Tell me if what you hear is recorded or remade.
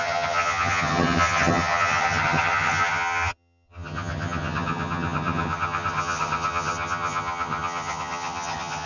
remade